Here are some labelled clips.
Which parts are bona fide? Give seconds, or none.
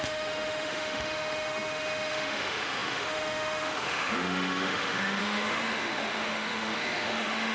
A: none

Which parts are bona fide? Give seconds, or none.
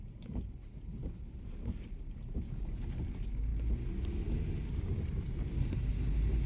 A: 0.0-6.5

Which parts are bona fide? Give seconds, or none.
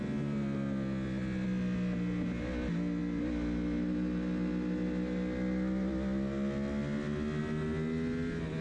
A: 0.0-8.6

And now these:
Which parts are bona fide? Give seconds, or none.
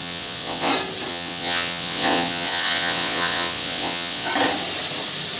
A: 0.7-1.1; 4.3-5.4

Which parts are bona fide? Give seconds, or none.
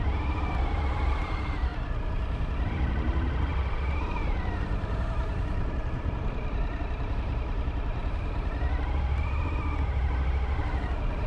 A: 1.7-2.7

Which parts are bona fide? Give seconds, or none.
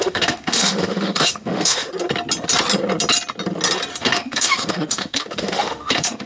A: 1.9-4.0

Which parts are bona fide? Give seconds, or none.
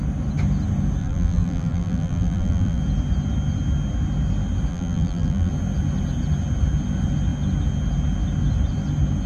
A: 0.0-1.0; 2.8-4.7; 5.5-9.3